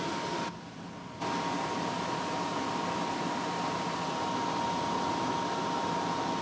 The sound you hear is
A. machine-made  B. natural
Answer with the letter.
B